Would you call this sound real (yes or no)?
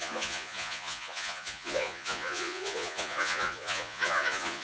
no